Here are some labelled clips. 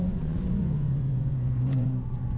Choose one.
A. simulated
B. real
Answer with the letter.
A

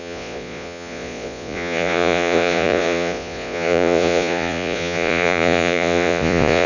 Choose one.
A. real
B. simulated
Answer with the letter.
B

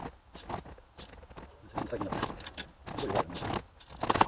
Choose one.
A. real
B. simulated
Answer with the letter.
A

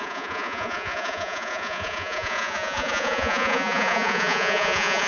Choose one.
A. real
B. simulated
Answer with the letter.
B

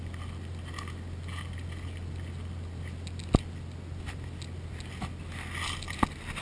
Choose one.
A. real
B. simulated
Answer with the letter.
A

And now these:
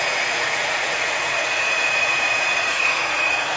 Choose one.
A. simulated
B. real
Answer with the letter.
A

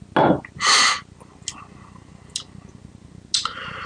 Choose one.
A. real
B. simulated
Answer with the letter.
A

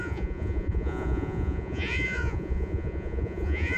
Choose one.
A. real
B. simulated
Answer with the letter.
B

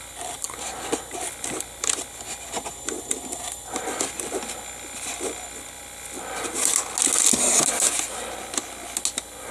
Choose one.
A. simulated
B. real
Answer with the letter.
B